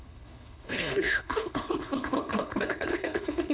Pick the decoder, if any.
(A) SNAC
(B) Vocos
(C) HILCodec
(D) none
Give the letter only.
C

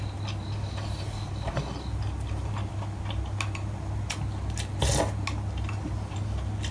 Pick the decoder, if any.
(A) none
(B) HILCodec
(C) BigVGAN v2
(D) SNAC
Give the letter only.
A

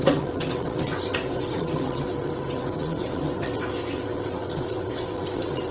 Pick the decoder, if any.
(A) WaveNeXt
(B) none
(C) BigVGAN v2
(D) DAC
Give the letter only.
A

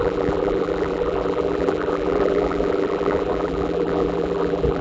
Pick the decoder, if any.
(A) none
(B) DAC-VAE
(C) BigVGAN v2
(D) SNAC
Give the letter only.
C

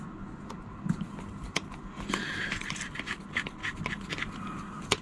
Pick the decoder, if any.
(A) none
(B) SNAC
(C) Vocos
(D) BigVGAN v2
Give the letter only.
A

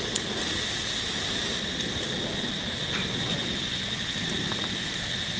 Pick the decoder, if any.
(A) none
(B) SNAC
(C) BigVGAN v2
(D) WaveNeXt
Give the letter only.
A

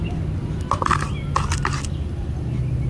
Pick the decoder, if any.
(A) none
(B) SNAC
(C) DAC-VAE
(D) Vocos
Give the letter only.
A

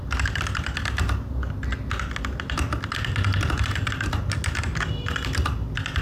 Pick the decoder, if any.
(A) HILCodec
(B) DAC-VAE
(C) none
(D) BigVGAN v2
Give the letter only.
C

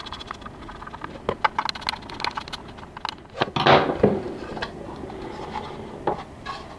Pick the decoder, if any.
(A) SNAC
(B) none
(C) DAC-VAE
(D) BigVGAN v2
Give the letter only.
B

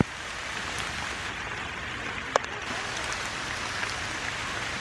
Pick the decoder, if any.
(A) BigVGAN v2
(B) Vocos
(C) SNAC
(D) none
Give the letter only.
D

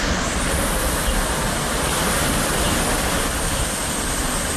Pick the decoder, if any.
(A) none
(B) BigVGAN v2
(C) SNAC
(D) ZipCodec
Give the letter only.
A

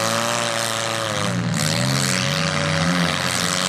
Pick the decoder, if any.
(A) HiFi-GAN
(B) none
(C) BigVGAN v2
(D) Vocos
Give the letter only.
B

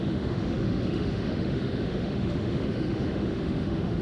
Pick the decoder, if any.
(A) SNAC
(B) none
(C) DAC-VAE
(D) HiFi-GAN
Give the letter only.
C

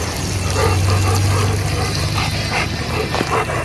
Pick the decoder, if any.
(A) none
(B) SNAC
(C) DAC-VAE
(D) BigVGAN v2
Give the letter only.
A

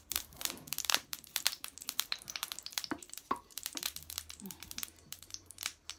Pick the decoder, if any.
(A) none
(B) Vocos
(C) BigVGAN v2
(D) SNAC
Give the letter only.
C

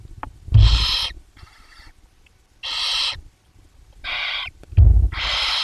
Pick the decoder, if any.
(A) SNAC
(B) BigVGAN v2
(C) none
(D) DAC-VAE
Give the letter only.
C